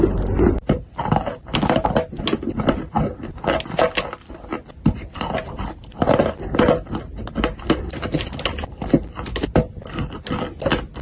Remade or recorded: recorded